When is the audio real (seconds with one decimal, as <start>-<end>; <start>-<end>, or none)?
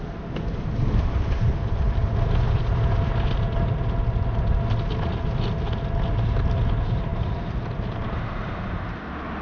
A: 0.0-9.4